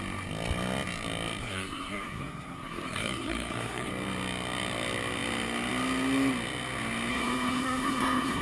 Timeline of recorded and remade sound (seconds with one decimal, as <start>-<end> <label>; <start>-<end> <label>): 0.0-1.4 recorded; 1.4-3.9 remade; 3.9-7.1 recorded; 7.1-8.4 remade